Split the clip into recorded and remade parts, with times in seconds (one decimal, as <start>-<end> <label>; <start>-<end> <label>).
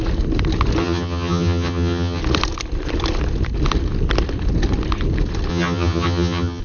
0.0-0.8 recorded; 0.8-2.2 remade; 2.2-5.5 recorded; 5.5-6.6 remade